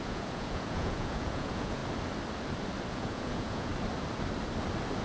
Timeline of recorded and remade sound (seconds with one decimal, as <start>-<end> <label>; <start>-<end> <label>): 0.0-1.8 remade; 1.8-2.9 recorded; 2.9-3.7 remade; 3.7-5.0 recorded